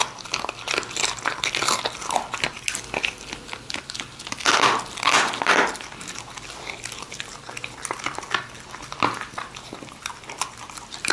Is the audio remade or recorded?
recorded